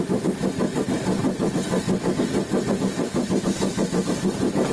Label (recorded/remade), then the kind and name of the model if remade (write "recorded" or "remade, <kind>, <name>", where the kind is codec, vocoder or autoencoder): recorded